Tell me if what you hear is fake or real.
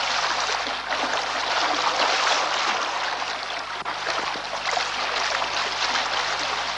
real